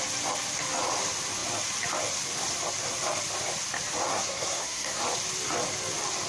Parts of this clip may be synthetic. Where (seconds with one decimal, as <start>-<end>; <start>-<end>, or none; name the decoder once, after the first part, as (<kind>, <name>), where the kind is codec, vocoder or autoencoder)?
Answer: 4.1-5.0 (codec, SNAC)